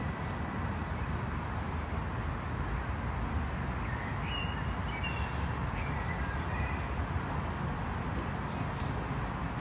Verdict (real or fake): real